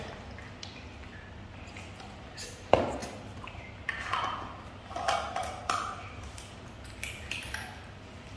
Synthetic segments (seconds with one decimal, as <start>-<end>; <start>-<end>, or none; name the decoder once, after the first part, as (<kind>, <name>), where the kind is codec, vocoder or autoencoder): none